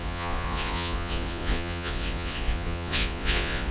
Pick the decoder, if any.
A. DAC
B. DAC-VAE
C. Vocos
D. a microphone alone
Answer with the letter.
C